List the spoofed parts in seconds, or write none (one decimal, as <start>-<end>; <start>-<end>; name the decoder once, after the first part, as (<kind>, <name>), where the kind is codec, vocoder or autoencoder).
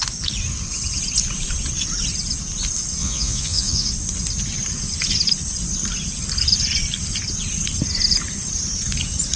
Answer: 3.0-3.9 (vocoder, Vocos)